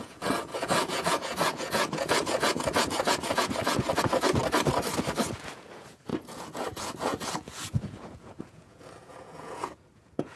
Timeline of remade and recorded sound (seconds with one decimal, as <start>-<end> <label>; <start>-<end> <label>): 0.0-4.4 remade; 4.4-5.4 recorded; 5.4-10.4 remade